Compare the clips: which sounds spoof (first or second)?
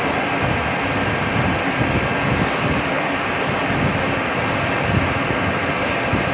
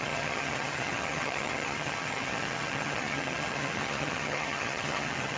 second